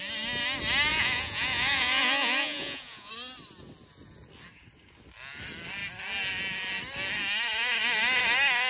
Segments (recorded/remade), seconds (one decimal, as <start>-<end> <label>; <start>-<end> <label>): 0.0-0.9 recorded; 0.9-3.1 remade; 3.1-8.7 recorded